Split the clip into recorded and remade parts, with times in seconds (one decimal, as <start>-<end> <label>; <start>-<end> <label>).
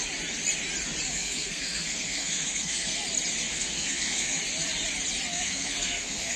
0.0-1.1 recorded; 1.1-3.0 remade; 3.0-3.5 recorded; 3.5-4.4 remade; 4.4-5.3 recorded; 5.3-6.4 remade